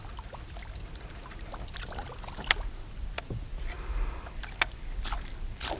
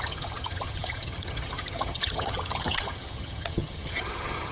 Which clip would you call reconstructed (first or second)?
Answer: second